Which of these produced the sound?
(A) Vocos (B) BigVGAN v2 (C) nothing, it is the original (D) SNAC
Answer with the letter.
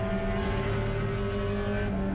C